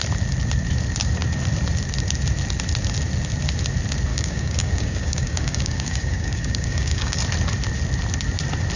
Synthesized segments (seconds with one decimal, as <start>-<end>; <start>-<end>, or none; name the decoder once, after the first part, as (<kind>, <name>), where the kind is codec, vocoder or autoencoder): 4.1-7.2 (codec, DAC)